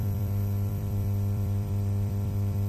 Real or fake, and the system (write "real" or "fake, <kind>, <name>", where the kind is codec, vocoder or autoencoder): fake, vocoder, BigVGAN v2